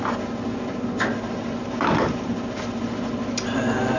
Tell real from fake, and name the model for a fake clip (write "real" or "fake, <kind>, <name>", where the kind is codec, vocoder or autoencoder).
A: real